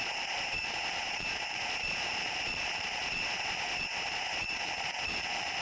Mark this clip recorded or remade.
remade